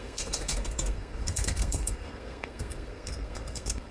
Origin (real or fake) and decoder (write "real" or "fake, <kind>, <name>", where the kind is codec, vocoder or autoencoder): fake, codec, SNAC